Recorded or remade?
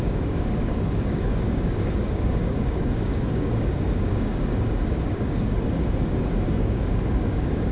remade